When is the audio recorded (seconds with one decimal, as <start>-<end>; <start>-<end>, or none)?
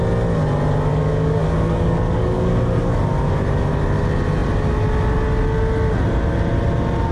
0.0-0.9; 3.0-7.1